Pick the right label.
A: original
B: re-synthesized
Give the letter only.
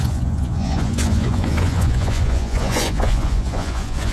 B